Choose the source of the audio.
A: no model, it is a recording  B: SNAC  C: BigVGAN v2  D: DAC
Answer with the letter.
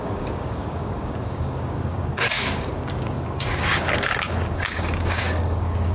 D